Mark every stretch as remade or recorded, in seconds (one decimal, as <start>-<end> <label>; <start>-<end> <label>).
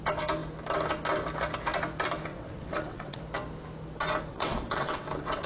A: 0.0-2.3 recorded; 2.3-3.2 remade; 3.2-4.3 recorded; 4.3-5.5 remade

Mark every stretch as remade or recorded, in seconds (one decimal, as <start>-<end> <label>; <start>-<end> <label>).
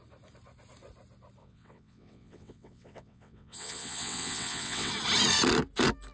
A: 0.0-1.4 recorded; 1.4-4.9 remade; 4.9-6.1 recorded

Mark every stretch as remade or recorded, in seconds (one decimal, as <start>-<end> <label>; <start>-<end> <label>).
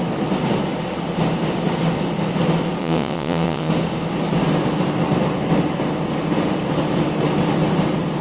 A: 0.0-2.8 recorded; 2.8-3.7 remade; 3.7-8.2 recorded